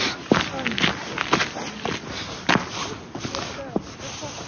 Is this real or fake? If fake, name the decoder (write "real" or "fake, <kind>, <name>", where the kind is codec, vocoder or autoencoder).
real